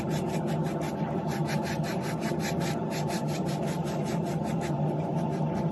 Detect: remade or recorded recorded